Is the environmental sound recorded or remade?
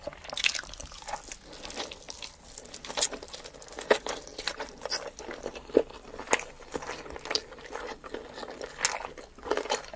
recorded